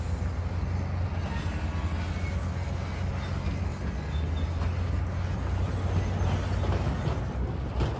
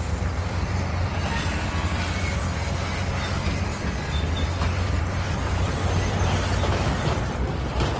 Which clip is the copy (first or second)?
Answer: second